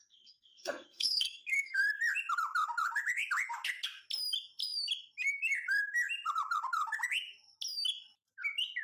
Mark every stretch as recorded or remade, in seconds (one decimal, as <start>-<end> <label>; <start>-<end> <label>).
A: 0.0-1.8 remade; 1.8-8.8 recorded